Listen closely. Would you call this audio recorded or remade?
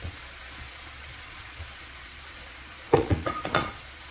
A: remade